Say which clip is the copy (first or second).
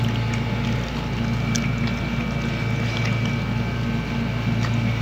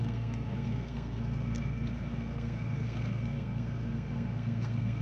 second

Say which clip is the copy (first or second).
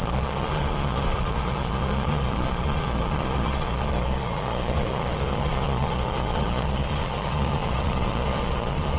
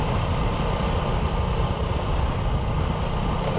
first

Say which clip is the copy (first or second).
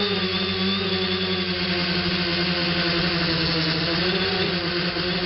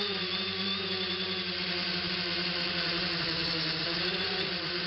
second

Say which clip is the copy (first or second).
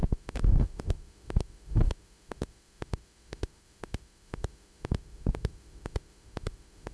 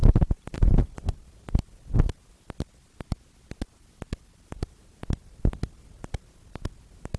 first